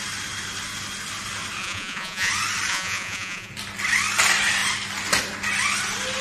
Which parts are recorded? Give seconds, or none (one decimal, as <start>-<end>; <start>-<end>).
0.0-1.6; 2.3-2.7; 3.5-6.2